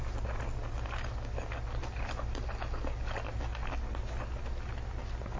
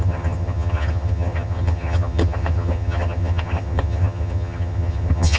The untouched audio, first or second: first